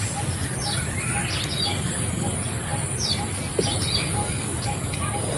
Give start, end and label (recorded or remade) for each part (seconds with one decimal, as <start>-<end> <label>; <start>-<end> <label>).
0.0-4.2 recorded; 4.2-5.0 remade; 5.0-5.4 recorded